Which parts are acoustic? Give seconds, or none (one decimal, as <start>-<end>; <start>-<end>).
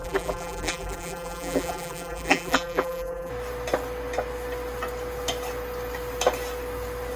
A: 3.3-7.2